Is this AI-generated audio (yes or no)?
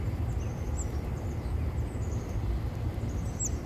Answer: no